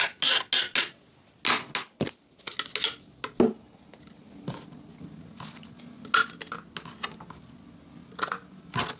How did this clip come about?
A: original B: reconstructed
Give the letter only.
A